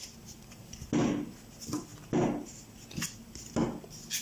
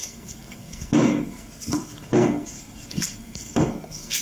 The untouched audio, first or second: first